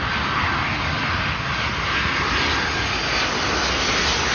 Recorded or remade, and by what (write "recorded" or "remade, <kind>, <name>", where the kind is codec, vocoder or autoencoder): recorded